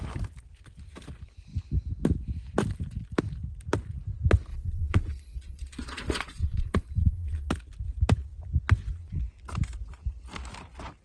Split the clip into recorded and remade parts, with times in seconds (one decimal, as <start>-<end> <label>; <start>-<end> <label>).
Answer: 0.0-4.5 recorded; 4.5-7.5 remade; 7.5-11.0 recorded